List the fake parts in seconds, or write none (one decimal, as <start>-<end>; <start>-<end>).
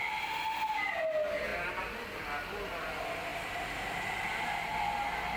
none